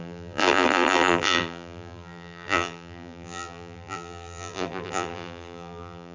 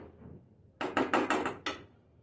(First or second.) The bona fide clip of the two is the second